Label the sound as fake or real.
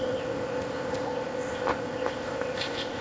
fake